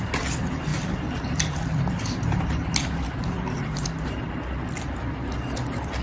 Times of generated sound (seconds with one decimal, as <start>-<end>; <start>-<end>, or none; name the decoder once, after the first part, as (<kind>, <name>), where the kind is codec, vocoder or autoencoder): none